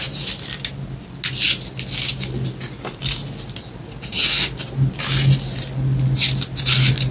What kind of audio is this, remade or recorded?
recorded